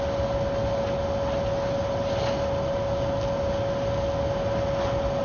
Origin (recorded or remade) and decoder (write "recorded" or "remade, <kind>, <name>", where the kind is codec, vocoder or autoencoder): recorded